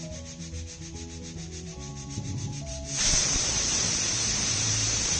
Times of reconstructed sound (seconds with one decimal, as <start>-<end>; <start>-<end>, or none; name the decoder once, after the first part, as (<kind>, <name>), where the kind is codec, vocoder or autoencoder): 1.9-5.2 (vocoder, BigVGAN v2)